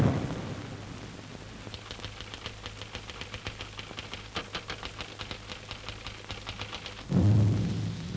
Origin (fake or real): real